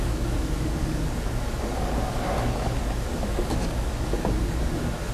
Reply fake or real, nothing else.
fake